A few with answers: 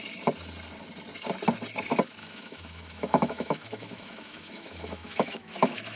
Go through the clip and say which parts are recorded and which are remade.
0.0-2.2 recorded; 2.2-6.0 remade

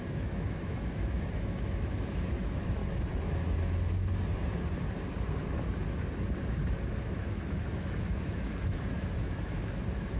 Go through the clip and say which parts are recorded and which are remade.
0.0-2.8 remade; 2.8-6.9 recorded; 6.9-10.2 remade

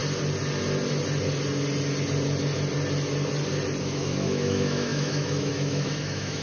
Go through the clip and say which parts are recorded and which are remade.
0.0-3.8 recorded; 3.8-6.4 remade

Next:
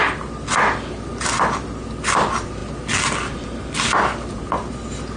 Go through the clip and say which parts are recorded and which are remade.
0.0-5.2 recorded

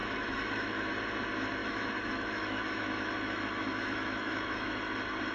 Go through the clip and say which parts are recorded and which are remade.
0.0-0.9 remade; 0.9-1.6 recorded; 1.6-4.8 remade; 4.8-5.3 recorded

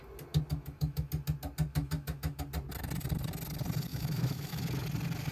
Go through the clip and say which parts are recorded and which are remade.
0.0-0.5 recorded; 0.5-1.1 remade; 1.1-1.7 recorded; 1.7-2.4 remade; 2.4-3.9 recorded; 3.9-4.6 remade; 4.6-5.3 recorded

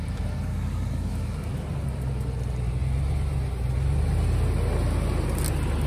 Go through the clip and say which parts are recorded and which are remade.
0.0-5.9 recorded

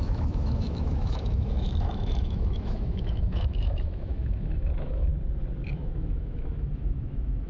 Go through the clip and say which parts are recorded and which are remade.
0.0-5.1 remade; 5.1-5.7 recorded; 5.7-7.5 remade